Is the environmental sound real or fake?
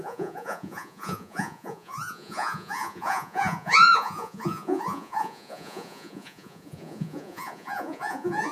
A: fake